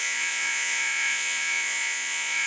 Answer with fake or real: fake